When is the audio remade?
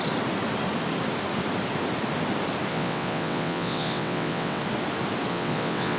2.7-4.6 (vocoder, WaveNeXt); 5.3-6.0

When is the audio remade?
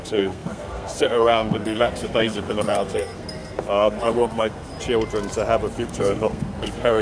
0.0-4.7 (codec, SNAC); 5.8-7.0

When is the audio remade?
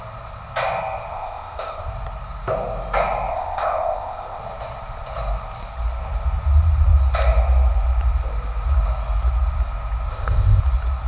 1.1-1.9 (codec, ZipCodec); 3.3-4.4; 10.1-10.6